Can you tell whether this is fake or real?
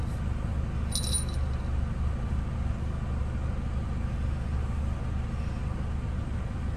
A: real